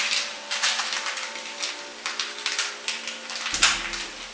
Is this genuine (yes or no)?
yes